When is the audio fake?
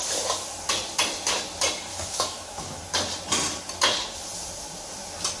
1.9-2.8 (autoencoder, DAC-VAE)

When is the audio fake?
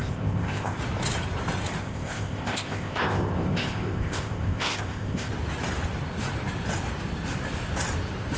0.0-0.8 (codec, ZipCodec); 1.8-5.3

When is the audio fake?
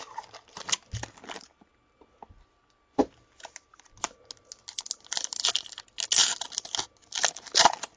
none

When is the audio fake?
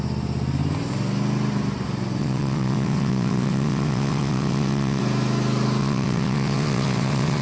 2.2-5.0 (vocoder, WaveNeXt); 5.8-7.4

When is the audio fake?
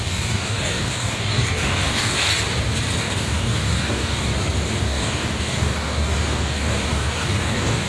0.0-2.3 (codec, DAC); 3.0-4.3; 4.8-7.9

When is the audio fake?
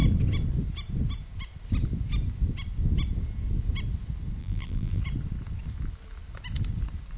4.4-5.0 (vocoder, BigVGAN v2)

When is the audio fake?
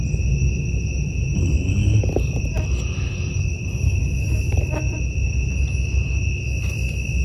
none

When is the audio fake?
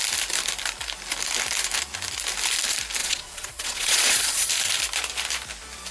3.0-4.5 (vocoder, Vocos)